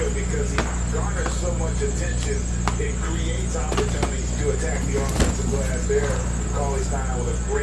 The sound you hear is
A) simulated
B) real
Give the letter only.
B